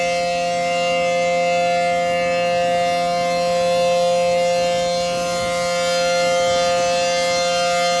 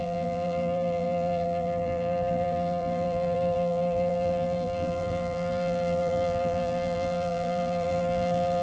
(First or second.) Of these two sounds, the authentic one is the first